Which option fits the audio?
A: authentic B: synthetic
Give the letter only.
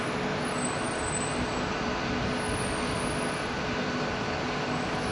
A